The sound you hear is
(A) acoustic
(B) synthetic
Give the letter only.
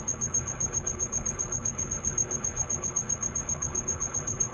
B